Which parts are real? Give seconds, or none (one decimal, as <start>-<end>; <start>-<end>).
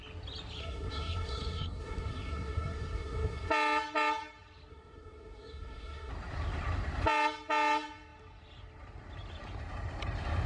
0.0-0.6; 3.5-4.7; 6.1-10.5